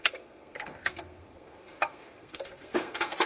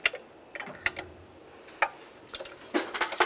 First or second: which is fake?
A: first